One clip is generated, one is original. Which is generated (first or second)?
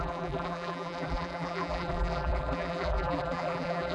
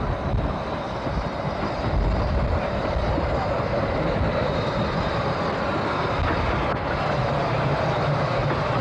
first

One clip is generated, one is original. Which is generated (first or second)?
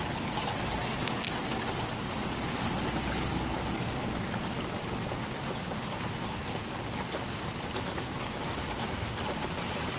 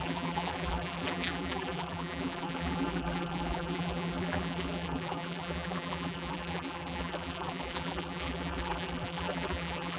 second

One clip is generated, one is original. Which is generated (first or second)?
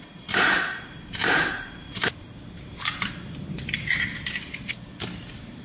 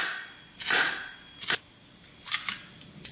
first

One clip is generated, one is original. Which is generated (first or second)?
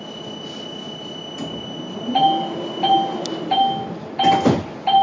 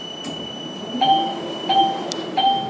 second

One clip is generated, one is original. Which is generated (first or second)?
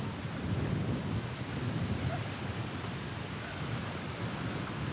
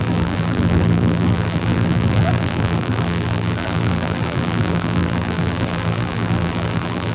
second